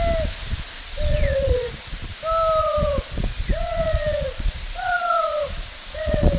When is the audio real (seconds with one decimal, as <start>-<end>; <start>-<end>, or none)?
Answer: 0.0-0.8; 2.1-2.6